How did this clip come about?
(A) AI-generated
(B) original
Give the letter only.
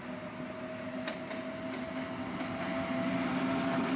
B